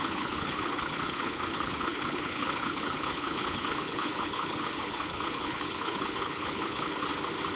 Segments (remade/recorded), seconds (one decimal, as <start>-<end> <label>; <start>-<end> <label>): 0.0-7.1 remade; 7.1-7.6 recorded